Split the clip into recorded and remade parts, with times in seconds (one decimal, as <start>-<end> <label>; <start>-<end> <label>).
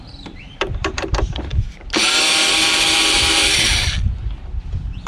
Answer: 0.0-1.5 remade; 1.5-4.6 recorded; 4.6-5.1 remade